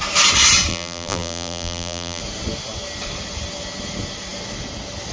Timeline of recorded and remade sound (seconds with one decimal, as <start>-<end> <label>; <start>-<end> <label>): 0.0-0.7 recorded; 0.7-2.2 remade; 2.2-5.1 recorded